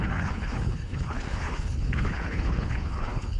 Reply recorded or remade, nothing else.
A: remade